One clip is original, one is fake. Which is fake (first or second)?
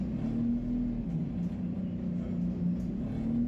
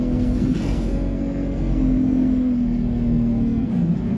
second